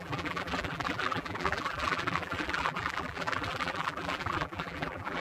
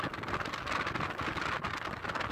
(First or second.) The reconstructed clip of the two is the first